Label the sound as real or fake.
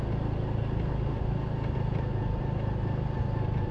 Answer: real